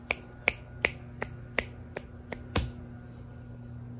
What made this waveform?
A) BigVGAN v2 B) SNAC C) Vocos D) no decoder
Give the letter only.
D